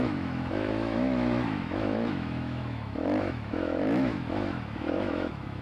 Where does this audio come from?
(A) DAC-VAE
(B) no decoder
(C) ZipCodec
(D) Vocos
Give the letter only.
A